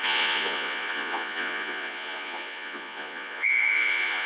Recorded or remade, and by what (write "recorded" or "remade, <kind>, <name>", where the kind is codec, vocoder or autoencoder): remade, vocoder, Vocos